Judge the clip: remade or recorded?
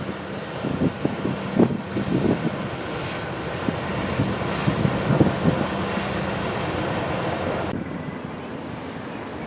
recorded